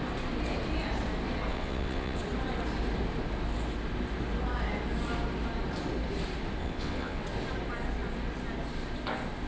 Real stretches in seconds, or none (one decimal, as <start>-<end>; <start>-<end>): 0.0-1.5; 2.2-6.6; 7.2-9.5

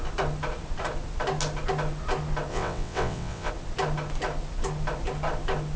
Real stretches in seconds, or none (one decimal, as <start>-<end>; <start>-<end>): 0.0-2.5; 3.5-5.8

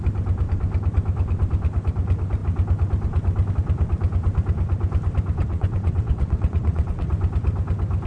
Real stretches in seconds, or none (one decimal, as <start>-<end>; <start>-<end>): 0.0-5.4; 7.1-8.1

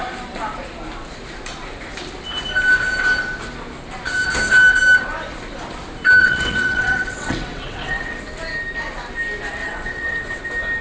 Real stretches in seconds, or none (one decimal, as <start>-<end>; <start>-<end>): 0.0-6.2; 8.2-9.6; 10.4-10.8

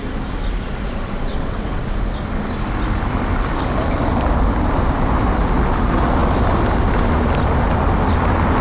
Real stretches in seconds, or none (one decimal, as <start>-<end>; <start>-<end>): 0.0-1.3; 1.8-8.6